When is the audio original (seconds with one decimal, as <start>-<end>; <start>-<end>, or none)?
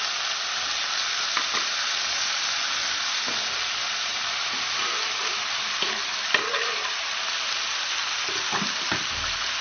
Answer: 0.0-4.1; 7.9-9.6